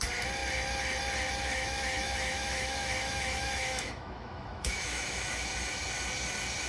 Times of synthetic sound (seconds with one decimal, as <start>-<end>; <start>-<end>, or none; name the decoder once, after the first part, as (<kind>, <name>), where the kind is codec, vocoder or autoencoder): 1.5-5.5 (autoencoder, DAC-VAE)